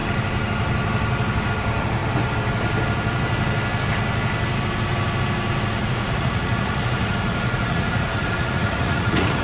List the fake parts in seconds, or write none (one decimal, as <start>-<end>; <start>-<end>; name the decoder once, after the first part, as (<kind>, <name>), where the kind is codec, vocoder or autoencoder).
5.8-9.4 (vocoder, Vocos)

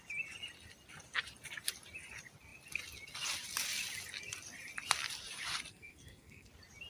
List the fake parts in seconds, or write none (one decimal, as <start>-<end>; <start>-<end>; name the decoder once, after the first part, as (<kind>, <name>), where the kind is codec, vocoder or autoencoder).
5.7-6.5 (codec, SNAC)

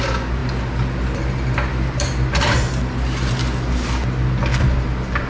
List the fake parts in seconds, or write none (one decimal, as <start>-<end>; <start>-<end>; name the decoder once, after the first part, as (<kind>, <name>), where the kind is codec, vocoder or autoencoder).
none

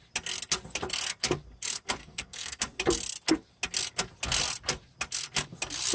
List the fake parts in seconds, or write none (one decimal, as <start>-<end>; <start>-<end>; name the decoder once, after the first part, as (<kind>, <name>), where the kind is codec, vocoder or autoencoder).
2.0-2.6 (codec, SNAC)

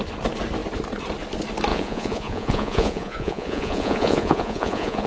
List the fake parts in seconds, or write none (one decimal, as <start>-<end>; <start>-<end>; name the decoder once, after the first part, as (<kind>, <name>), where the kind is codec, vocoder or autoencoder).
1.7-5.1 (vocoder, Vocos)

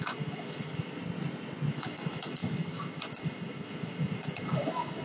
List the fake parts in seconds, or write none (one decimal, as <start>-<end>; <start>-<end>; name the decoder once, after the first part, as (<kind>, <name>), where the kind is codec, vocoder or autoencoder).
0.0-1.0 (autoencoder, DAC-VAE); 1.7-5.0

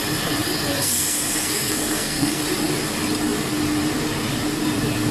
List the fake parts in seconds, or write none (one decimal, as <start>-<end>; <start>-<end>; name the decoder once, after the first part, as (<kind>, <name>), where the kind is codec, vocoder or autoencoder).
0.8-2.4 (codec, SNAC)